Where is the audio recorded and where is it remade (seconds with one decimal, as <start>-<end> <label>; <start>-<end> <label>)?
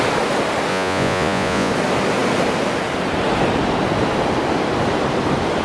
0.0-0.7 recorded; 0.7-1.7 remade; 1.7-5.6 recorded